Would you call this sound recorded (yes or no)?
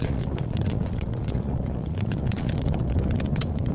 no